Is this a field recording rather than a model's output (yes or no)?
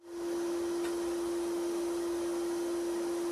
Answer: yes